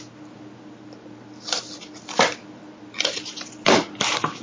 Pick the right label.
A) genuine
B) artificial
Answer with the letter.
A